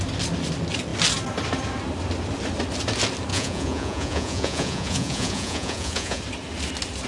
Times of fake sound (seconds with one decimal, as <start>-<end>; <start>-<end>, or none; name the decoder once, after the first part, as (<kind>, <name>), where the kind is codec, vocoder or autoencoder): 3.3-6.2 (vocoder, Vocos)